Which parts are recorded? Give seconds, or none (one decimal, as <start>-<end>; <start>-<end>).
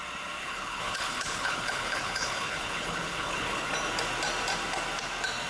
0.0-0.4; 3.7-5.5